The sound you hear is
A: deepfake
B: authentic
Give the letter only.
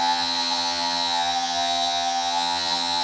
A